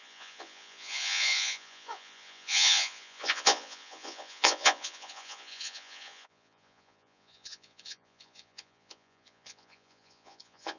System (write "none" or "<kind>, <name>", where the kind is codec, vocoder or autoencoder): vocoder, Vocos